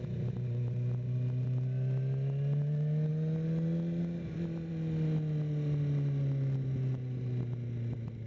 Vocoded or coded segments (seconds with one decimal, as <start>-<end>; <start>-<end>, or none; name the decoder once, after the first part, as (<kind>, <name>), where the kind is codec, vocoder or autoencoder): none